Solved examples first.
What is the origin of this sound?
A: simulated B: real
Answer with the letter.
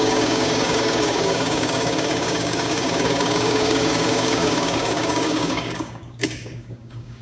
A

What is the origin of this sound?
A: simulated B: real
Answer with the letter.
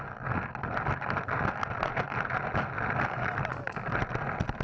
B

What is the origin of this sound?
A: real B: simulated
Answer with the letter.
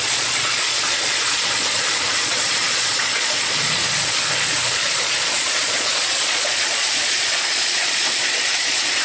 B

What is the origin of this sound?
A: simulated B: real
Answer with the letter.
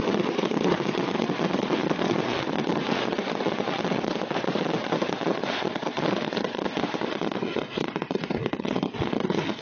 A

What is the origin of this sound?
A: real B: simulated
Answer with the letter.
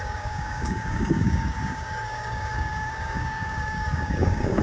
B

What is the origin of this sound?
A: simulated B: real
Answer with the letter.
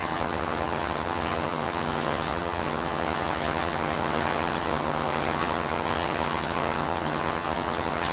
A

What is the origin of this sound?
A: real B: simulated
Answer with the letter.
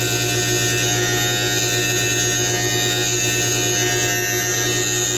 A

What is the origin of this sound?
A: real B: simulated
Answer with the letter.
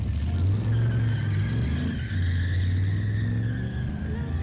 A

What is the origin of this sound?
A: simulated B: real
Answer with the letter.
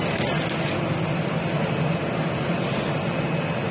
B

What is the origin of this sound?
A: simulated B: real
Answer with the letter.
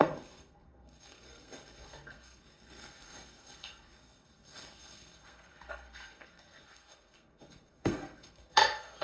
A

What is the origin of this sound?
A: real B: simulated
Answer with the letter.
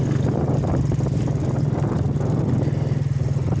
A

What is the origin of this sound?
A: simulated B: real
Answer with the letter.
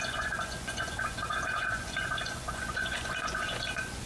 A